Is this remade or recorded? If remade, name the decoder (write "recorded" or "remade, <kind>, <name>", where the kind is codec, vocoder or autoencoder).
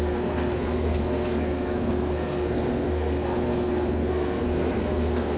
remade, codec, SNAC